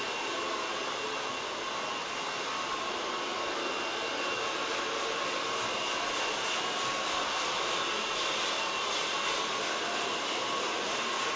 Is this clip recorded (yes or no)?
yes